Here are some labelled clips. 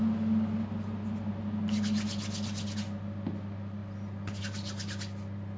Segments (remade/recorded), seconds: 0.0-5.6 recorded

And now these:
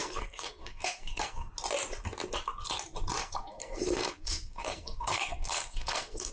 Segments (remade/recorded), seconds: 0.0-1.5 remade; 1.5-3.2 recorded; 3.2-6.3 remade